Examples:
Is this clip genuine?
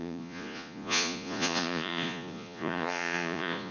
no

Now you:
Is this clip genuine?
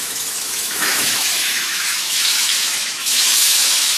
no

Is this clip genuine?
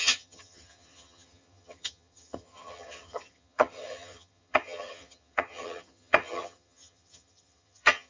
no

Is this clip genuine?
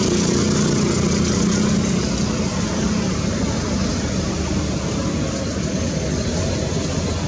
yes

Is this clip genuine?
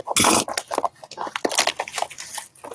yes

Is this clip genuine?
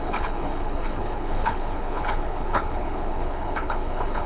no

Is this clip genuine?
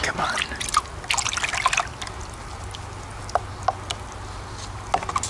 yes